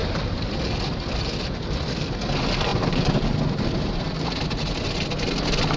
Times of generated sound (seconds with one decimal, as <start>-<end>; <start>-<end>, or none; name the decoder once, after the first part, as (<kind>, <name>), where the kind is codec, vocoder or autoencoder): none